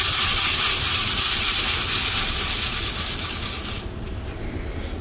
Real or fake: real